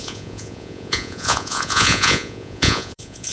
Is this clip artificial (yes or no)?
yes